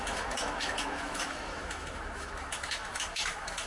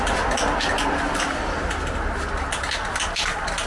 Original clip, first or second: second